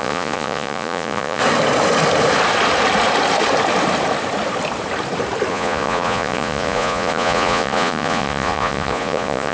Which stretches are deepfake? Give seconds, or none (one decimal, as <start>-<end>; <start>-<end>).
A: 0.0-1.4; 5.5-9.5